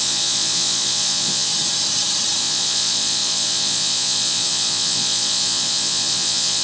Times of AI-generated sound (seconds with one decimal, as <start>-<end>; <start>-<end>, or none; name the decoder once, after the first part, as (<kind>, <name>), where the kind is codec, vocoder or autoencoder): 0.0-1.5 (vocoder, Vocos); 2.4-6.6